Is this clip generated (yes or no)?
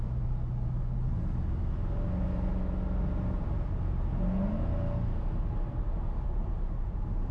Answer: no